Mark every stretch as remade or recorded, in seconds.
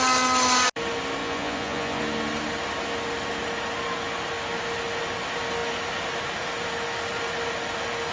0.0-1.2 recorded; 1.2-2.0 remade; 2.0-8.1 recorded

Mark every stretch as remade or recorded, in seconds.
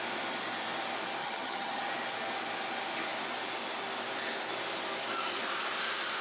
0.0-1.2 recorded; 1.2-1.8 remade; 1.8-6.2 recorded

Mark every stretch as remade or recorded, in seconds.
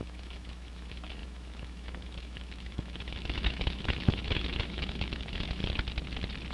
0.0-5.6 remade; 5.6-6.5 recorded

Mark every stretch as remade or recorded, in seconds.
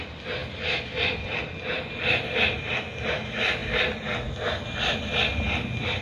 0.0-6.0 recorded